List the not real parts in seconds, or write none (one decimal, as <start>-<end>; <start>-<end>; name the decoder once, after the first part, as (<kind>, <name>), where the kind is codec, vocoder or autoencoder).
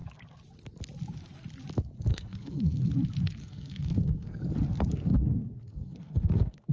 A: 2.1-2.9 (codec, SNAC); 3.4-4.4; 5.0-6.7